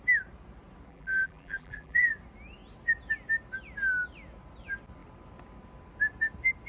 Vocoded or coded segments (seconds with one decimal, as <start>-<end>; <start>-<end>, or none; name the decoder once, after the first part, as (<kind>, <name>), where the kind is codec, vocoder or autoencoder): 0.9-2.1 (vocoder, BigVGAN v2)